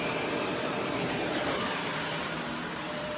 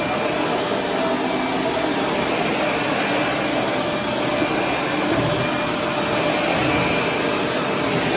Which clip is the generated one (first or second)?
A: first